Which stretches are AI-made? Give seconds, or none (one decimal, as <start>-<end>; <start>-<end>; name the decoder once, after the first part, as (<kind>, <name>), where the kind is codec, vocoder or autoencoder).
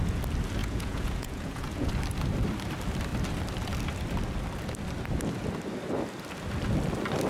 0.6-1.9 (vocoder, Vocos)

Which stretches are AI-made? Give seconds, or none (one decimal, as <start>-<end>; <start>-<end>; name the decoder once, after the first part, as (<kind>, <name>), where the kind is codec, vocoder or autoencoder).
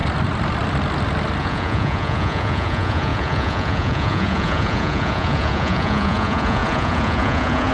1.4-7.7 (vocoder, Vocos)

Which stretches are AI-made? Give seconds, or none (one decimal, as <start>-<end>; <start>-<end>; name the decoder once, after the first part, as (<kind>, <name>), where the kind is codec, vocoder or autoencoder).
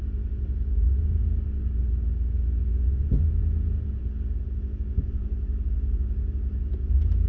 none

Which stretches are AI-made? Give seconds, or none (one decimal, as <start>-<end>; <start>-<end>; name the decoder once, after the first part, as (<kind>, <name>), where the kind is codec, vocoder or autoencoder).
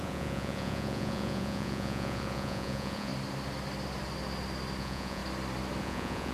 0.0-3.1 (vocoder, Vocos); 4.8-5.2; 5.8-6.3